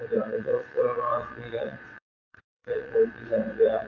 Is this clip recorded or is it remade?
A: remade